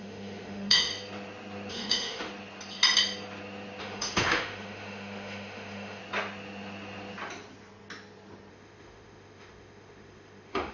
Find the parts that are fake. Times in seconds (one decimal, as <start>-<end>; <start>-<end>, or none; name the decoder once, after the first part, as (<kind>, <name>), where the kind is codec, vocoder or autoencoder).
0.0-0.9 (autoencoder, DAC-VAE); 1.7-2.3; 3.8-6.0; 8.5-10.7